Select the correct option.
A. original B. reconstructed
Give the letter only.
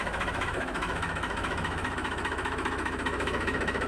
B